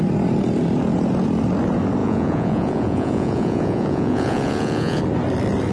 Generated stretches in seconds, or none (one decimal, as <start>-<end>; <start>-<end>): 2.0-5.0